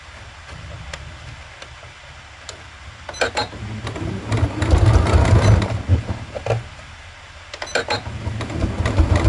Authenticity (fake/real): real